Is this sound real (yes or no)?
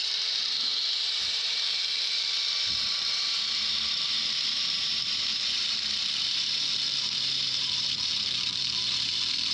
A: no